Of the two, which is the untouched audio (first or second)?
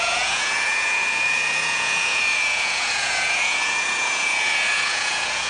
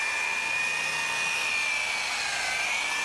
second